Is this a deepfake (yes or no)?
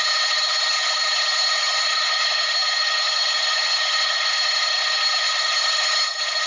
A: yes